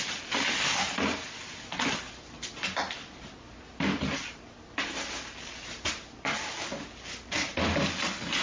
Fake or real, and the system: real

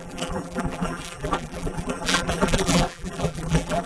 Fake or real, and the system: fake, vocoder, BigVGAN v2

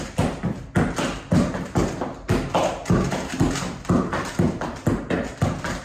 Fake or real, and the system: real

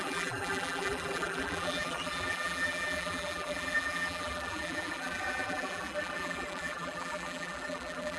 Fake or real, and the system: fake, vocoder, BigVGAN v2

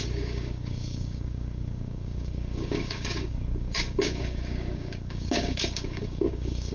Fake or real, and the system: fake, codec, DAC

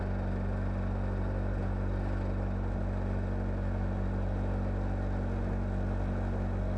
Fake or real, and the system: real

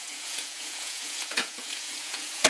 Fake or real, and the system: fake, vocoder, Vocos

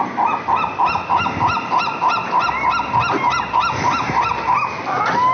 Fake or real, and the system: real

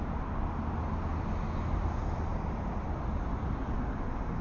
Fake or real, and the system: real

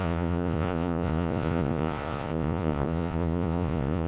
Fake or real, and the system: fake, vocoder, Vocos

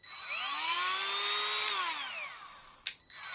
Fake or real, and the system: real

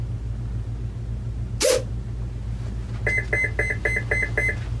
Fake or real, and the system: real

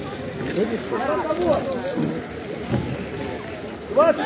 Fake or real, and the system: real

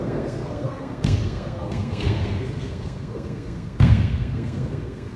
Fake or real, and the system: fake, codec, SNAC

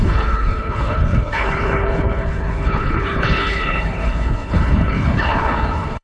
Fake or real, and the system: fake, codec, HILCodec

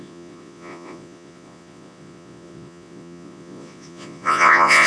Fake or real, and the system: fake, vocoder, Vocos